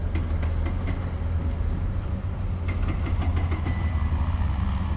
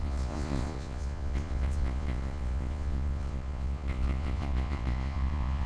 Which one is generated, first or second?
second